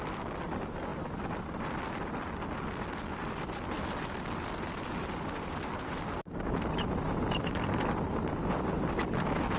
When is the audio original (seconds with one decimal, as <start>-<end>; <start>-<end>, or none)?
0.0-9.6